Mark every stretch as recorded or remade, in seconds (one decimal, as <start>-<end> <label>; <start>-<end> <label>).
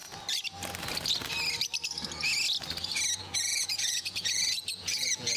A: 0.0-3.2 recorded; 3.2-5.4 remade